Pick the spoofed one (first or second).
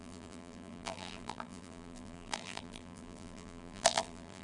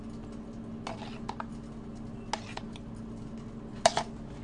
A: first